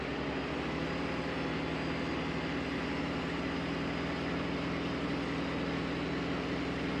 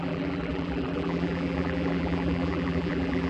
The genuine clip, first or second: first